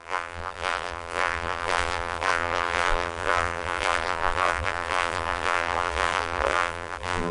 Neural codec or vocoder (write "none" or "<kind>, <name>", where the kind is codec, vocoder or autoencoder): vocoder, BigVGAN v2